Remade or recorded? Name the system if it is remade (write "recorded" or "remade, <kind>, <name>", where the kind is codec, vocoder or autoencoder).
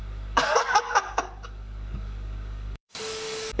remade, codec, DAC